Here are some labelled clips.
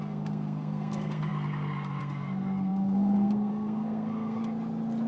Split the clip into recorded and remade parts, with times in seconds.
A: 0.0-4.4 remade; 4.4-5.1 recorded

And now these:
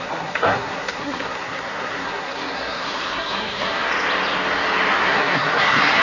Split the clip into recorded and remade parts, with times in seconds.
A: 0.0-3.9 remade; 3.9-4.9 recorded; 4.9-6.0 remade

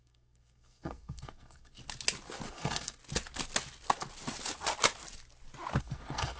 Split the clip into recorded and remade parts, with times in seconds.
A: 0.0-1.8 remade; 1.8-2.5 recorded; 2.5-3.0 remade; 3.0-5.8 recorded; 5.8-6.4 remade

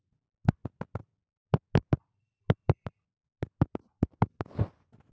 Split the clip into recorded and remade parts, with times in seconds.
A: 0.0-5.1 recorded